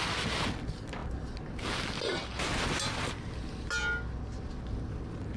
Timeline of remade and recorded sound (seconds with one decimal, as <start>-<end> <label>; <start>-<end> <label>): 0.0-5.4 recorded